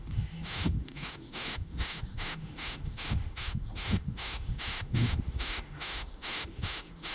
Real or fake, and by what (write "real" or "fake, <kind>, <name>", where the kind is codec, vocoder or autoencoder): fake, autoencoder, DAC-VAE